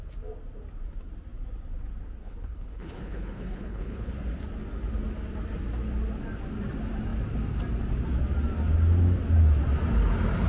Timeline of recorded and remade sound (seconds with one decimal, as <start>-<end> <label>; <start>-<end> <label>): 0.0-2.2 recorded; 2.2-4.1 remade; 4.1-10.5 recorded